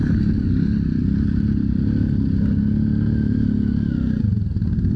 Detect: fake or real real